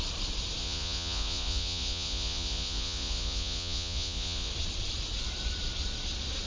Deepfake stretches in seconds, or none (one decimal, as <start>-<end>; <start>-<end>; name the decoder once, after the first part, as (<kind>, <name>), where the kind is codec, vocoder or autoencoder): 0.6-4.5 (vocoder, Vocos)